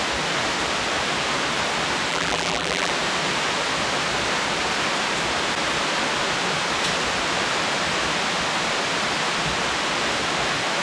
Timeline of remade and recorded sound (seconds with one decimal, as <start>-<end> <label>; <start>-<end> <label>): 0.0-2.1 recorded; 2.1-2.9 remade; 2.9-10.8 recorded